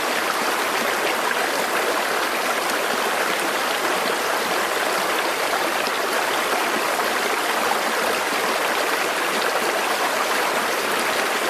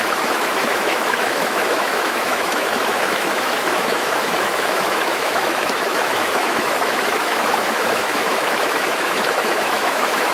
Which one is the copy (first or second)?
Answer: second